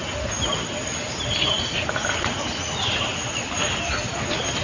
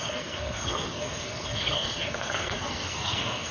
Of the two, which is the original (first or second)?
first